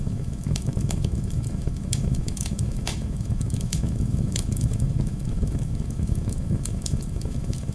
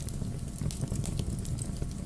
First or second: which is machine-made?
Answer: first